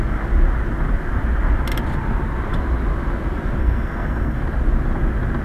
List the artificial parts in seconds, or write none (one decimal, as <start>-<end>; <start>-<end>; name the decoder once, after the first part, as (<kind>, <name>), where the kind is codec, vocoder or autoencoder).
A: 3.6-4.4 (codec, SNAC)